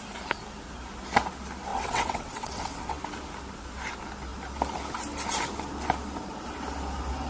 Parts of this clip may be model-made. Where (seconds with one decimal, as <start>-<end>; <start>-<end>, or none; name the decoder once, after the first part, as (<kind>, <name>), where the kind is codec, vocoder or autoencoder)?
1.7-3.0 (vocoder, WaveNeXt)